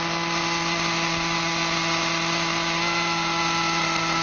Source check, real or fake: real